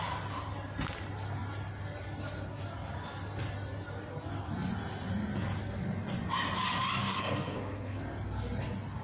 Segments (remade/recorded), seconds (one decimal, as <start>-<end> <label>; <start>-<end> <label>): 0.0-7.0 recorded; 7.0-8.0 remade; 8.0-9.0 recorded